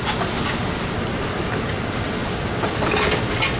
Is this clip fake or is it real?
real